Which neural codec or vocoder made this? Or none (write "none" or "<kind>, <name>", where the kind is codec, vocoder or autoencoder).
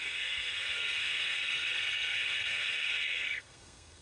codec, SNAC